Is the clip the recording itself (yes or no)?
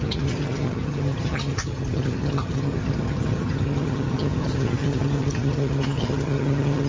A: no